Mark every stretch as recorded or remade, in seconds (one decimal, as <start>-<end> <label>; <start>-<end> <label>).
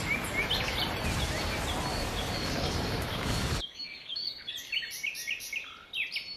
0.0-1.9 recorded; 1.9-4.5 remade; 4.5-6.4 recorded